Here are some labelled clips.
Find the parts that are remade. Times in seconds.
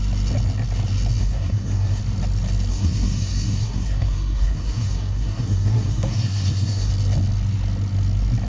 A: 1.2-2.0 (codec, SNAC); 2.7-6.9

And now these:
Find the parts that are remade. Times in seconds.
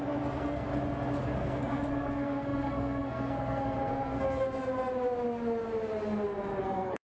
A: 0.0-0.7 (codec, SNAC); 1.2-4.6; 6.6-7.1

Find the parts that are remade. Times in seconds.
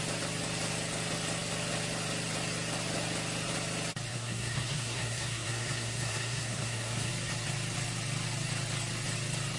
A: 4.1-7.1 (codec, SNAC)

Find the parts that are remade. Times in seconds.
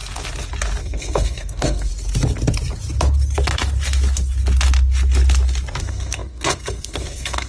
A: 0.8-1.9 (codec, SNAC); 5.8-7.5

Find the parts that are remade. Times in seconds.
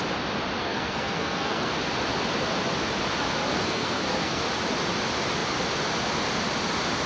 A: 0.6-1.7 (codec, SNAC); 3.5-4.4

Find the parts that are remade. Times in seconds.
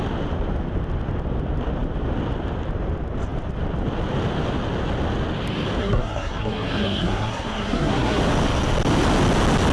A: 5.8-8.2 (codec, SNAC)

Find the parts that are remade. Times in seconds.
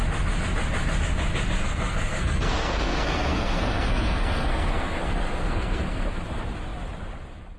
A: 1.6-6.2 (codec, SNAC)